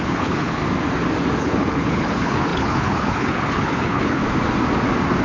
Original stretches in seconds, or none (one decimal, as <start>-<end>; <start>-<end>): 0.6-1.4; 4.2-5.2